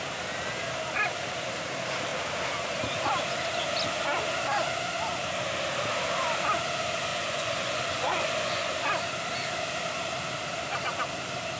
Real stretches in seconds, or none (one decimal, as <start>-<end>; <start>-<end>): 0.0-7.1; 8.7-11.6